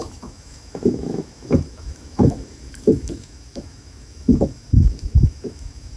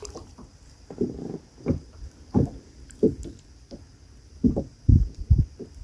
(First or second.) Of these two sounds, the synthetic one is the first